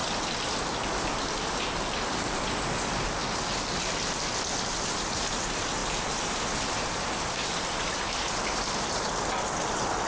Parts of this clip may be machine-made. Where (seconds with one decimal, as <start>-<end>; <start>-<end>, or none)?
none